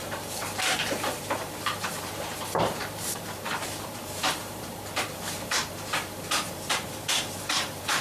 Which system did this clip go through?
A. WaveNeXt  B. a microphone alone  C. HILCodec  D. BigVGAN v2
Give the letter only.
D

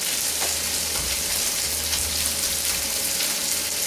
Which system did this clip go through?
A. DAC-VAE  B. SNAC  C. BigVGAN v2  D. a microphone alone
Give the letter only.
D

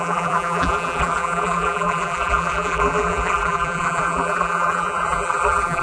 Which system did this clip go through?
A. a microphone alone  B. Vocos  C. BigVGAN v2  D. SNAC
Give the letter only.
C